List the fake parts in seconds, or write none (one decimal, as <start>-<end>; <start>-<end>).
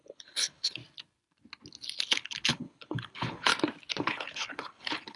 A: 0.0-0.8; 2.0-3.5; 4.0-5.2